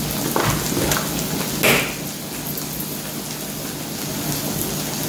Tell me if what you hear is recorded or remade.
recorded